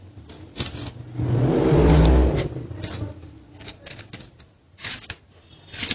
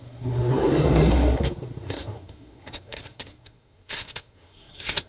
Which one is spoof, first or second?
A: second